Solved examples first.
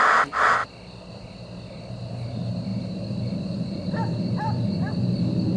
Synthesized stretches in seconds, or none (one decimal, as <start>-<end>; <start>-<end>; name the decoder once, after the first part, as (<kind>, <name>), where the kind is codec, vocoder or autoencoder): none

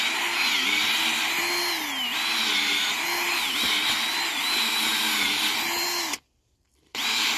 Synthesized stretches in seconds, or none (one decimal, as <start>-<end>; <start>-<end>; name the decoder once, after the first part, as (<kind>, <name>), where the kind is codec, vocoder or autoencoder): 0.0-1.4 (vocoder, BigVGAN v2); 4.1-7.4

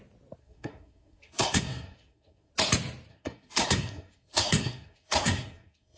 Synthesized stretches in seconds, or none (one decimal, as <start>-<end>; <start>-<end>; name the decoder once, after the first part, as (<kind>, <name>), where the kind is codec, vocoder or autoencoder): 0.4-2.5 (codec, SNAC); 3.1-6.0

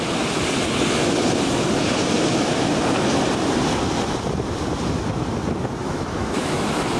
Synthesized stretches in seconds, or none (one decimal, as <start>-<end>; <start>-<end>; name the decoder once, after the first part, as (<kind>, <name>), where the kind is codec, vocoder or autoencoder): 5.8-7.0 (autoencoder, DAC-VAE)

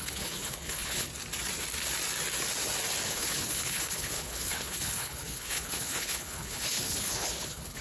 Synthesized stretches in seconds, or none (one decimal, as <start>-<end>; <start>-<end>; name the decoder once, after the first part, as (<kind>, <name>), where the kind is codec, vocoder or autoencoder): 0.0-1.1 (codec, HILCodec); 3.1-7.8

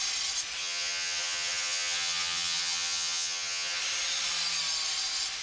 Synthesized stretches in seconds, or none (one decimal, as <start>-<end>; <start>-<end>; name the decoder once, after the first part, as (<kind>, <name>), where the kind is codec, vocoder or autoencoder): 0.6-3.8 (vocoder, HiFi-GAN)